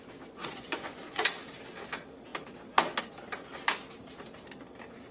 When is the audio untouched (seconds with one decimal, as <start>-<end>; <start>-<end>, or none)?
0.0-0.4; 1.2-5.1